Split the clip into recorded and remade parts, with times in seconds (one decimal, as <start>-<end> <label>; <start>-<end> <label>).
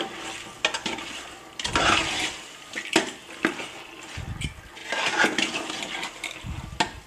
0.0-7.1 recorded